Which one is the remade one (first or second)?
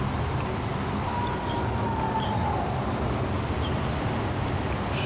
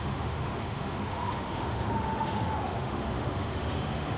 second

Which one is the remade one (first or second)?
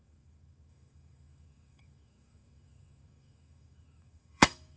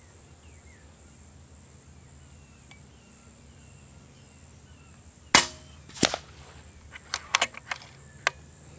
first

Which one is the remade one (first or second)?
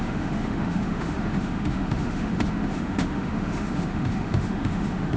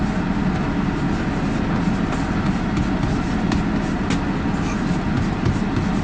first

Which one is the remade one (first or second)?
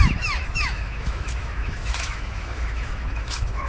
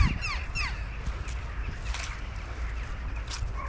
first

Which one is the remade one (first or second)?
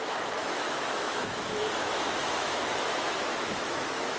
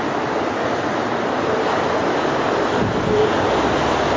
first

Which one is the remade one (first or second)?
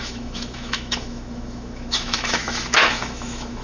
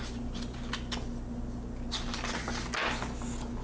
first